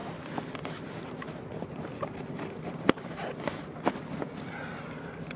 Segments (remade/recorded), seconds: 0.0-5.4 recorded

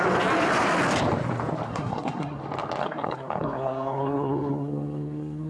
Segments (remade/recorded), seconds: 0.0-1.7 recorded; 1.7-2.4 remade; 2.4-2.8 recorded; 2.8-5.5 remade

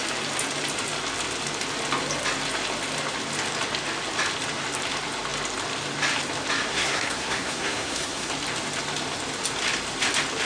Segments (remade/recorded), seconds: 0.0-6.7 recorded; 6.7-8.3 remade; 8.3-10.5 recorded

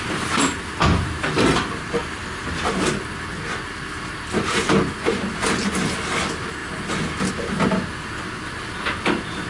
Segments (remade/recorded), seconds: 0.0-9.5 recorded

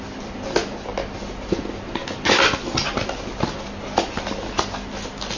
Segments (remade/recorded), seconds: 0.0-5.4 recorded

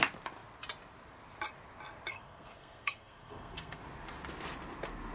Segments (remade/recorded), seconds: 0.0-2.1 recorded; 2.1-3.8 remade; 3.8-5.1 recorded

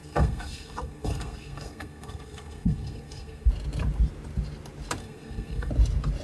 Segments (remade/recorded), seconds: 0.0-3.5 remade; 3.5-5.0 recorded; 5.0-5.7 remade; 5.7-6.2 recorded